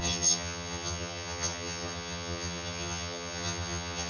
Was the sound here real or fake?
fake